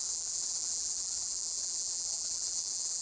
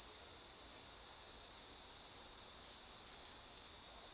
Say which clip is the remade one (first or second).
first